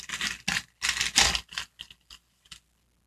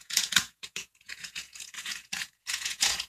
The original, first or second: first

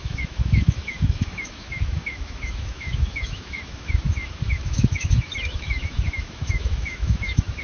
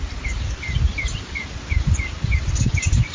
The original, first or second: second